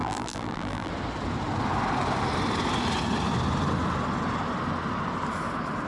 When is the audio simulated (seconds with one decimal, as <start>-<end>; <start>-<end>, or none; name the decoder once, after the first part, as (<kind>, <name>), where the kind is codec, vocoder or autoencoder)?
0.0-0.9 (vocoder, BigVGAN v2)